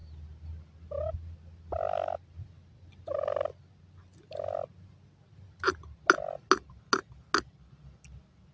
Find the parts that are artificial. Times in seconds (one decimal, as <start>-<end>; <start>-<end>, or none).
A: none